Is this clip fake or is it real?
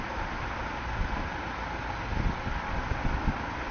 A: real